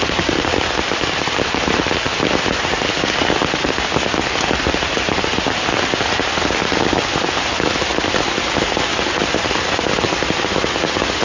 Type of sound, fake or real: real